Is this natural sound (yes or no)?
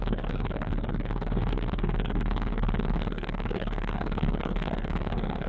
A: no